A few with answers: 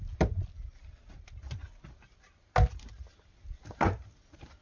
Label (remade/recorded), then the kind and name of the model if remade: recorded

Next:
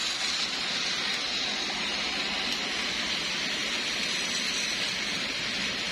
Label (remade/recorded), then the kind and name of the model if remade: recorded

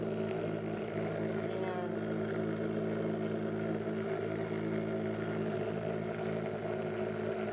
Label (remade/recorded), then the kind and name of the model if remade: recorded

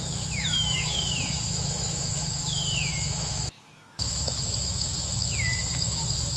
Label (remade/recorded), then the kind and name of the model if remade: remade, autoencoder, DAC-VAE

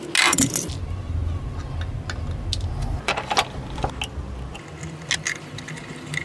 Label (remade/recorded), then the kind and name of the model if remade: recorded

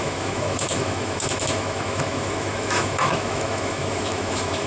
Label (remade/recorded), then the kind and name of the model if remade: remade, autoencoder, DAC-VAE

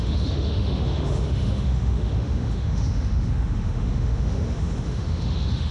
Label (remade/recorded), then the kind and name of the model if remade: remade, autoencoder, DAC-VAE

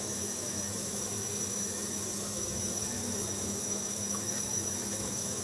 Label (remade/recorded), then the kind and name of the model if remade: remade, autoencoder, DAC-VAE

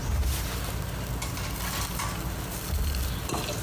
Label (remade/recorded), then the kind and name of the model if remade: recorded